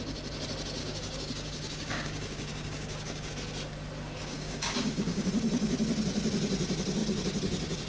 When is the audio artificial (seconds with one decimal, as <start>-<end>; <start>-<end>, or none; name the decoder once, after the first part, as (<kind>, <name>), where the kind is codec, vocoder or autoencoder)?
0.8-3.3 (codec, DAC); 4.2-5.3